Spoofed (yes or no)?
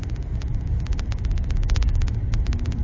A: yes